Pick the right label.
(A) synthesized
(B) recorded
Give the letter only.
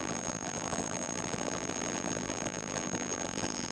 A